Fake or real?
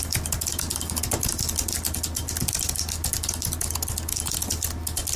real